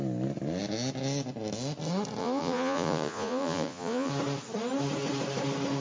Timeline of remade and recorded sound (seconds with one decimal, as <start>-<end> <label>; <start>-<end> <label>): 0.0-2.2 recorded; 2.2-4.1 remade; 4.1-5.8 recorded